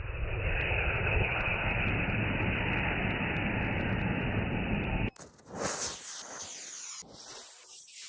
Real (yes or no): yes